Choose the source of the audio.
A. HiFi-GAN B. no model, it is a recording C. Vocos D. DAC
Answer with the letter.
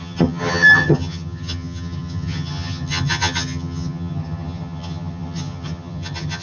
A